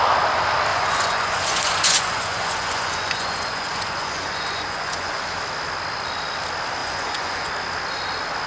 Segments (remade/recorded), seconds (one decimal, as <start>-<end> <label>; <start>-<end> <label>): 0.0-0.7 recorded; 0.7-5.2 remade; 5.2-6.8 recorded; 6.8-7.5 remade; 7.5-8.5 recorded